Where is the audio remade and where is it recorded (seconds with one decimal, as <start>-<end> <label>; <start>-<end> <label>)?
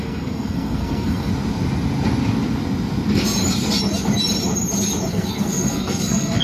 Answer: 0.0-1.3 remade; 1.3-5.1 recorded; 5.1-6.4 remade